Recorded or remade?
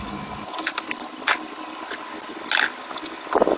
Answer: recorded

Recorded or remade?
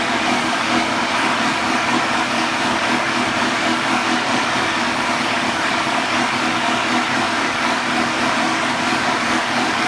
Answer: remade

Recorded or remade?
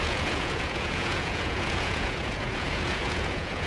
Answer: remade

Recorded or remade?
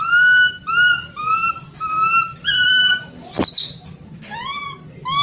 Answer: recorded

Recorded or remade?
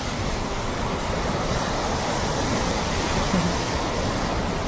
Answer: recorded